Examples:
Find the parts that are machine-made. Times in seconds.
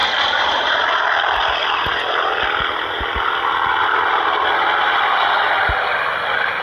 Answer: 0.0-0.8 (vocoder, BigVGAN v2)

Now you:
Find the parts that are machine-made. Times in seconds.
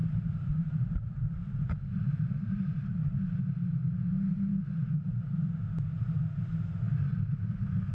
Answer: 0.0-3.4 (vocoder, BigVGAN v2)